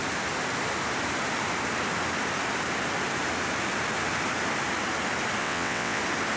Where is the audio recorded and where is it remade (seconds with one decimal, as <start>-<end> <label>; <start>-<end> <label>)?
0.0-5.4 recorded; 5.4-6.0 remade; 6.0-6.4 recorded